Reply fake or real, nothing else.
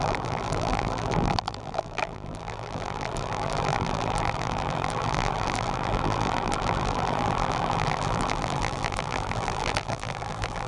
fake